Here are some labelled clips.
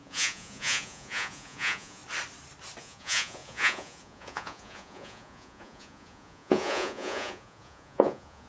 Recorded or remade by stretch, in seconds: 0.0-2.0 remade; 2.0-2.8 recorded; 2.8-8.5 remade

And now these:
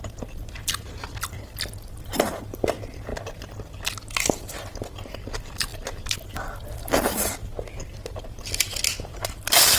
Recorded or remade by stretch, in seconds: 0.0-3.1 remade; 3.1-4.0 recorded; 4.0-9.8 remade

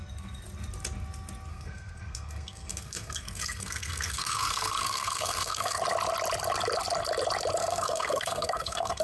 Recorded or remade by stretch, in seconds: 0.0-1.5 recorded; 1.5-5.8 remade; 5.8-7.6 recorded; 7.6-9.0 remade

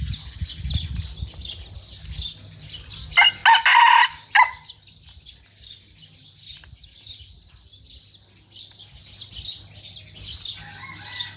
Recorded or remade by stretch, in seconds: 0.0-11.4 recorded